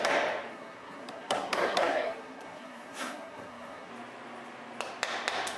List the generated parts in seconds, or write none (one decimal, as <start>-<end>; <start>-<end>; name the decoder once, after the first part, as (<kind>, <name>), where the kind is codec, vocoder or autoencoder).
0.5-3.9 (codec, SNAC)